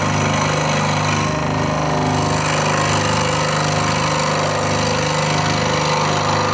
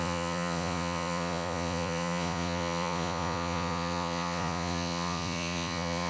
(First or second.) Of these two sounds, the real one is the first